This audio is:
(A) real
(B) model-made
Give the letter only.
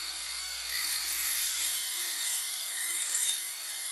B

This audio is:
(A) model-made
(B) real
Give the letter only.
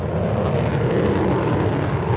B